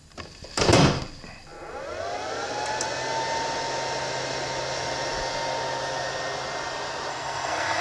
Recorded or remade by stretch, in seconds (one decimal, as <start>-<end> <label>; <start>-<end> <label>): 0.0-7.1 recorded; 7.1-7.8 remade